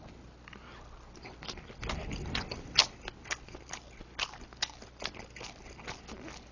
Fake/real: real